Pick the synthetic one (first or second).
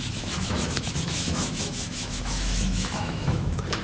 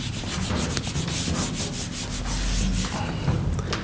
first